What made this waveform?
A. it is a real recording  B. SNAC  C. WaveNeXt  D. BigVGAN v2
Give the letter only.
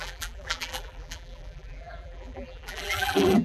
D